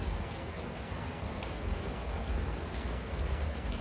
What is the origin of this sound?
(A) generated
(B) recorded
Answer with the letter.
A